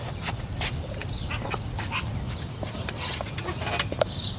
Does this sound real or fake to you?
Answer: real